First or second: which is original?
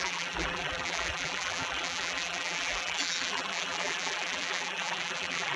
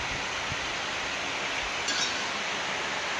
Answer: second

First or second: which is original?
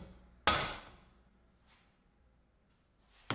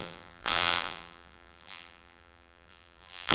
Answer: first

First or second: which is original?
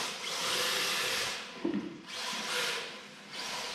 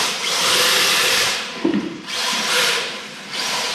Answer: first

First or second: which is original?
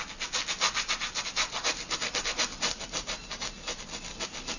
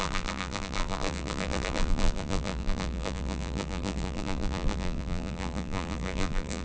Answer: first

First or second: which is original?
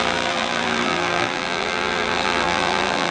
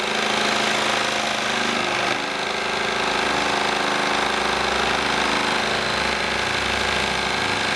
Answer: second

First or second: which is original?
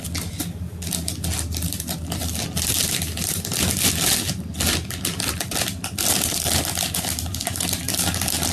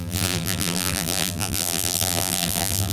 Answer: first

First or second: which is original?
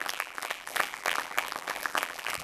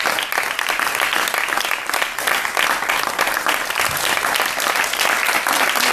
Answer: second